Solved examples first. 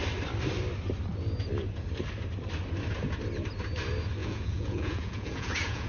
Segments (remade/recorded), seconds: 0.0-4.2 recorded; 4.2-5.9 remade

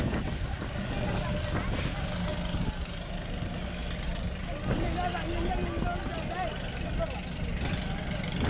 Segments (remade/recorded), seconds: 0.0-8.5 recorded

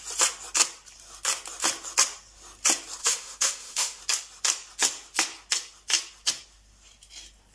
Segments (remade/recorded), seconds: 0.0-3.0 recorded; 3.0-4.0 remade; 4.0-7.5 recorded

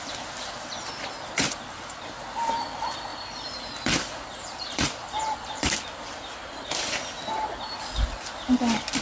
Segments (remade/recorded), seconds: 0.0-3.1 recorded; 3.1-5.8 remade; 5.8-9.0 recorded

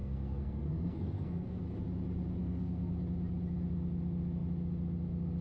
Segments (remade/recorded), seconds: 0.0-1.6 remade; 1.6-2.4 recorded; 2.4-2.9 remade; 2.9-5.4 recorded

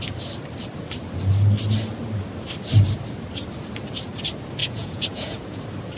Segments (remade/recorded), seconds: 0.0-4.6 recorded; 4.6-5.6 remade; 5.6-6.0 recorded